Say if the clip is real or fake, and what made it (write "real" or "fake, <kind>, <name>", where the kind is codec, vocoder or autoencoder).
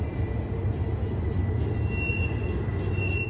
real